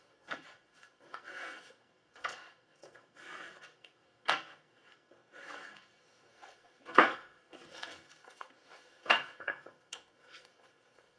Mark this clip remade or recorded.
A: remade